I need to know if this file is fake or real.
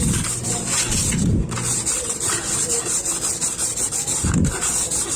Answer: real